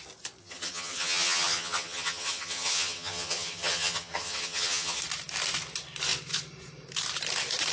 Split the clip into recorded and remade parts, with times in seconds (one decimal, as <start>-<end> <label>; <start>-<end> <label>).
0.0-0.4 recorded; 0.4-5.0 remade; 5.0-7.7 recorded